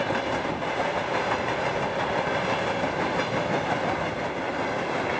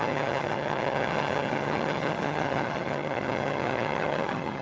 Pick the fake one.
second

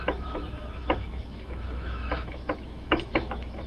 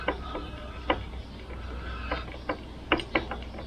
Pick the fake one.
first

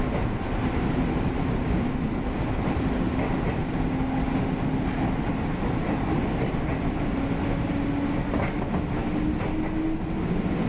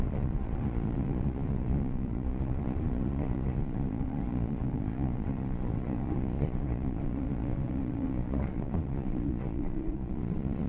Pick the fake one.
second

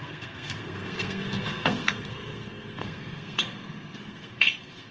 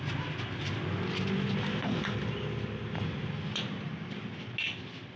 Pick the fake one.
first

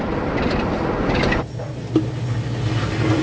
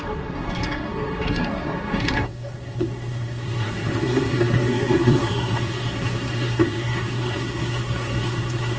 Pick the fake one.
second